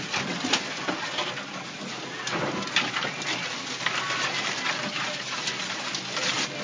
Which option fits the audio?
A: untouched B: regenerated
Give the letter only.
A